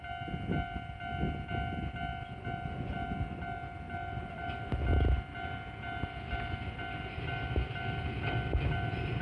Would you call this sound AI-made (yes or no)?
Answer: no